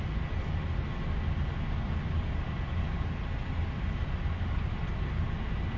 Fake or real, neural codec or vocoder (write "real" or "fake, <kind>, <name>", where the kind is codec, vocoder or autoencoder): real